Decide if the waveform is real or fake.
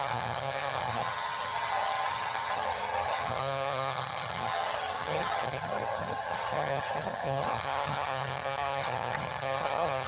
fake